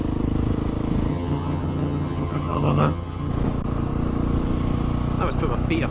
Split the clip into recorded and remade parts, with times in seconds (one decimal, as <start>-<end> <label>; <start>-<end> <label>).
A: 0.0-1.1 recorded; 1.1-3.3 remade; 3.3-5.9 recorded